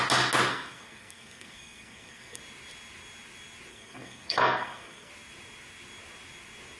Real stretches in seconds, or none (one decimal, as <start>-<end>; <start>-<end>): 0.0-0.5; 2.4-3.7; 5.1-6.8